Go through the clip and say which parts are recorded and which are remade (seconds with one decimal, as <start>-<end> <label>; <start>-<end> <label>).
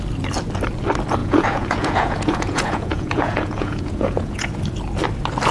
0.0-1.2 recorded; 1.2-4.5 remade; 4.5-5.5 recorded